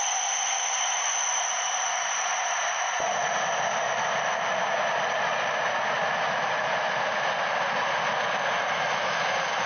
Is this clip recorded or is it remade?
recorded